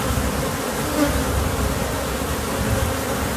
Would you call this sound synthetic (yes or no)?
no